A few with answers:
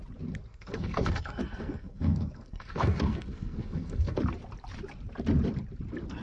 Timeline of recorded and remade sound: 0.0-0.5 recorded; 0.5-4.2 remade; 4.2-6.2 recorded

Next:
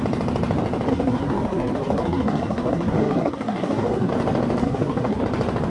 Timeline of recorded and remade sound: 0.0-0.9 recorded; 0.9-4.1 remade; 4.1-4.6 recorded; 4.6-5.2 remade; 5.2-5.7 recorded

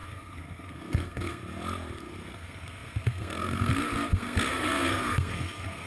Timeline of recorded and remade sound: 0.0-1.4 remade; 1.4-2.0 recorded; 2.0-5.9 remade

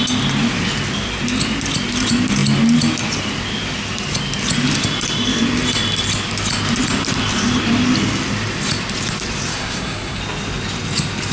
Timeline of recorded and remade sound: 0.0-9.5 recorded; 9.5-10.2 remade; 10.2-11.3 recorded